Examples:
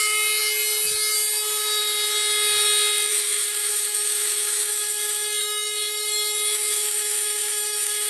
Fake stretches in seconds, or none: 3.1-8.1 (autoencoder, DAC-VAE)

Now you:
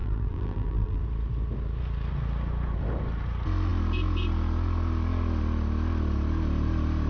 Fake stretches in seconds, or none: 0.0-1.0 (vocoder, BigVGAN v2)

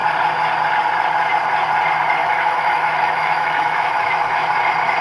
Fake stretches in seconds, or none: 2.2-4.5 (autoencoder, DAC-VAE)

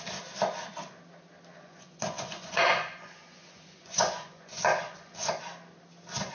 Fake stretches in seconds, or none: 1.5-5.3 (vocoder, Vocos)

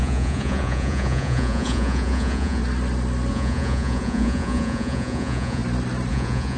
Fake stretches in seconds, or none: 0.0-2.6 (vocoder, Vocos); 3.3-5.6; 6.1-6.6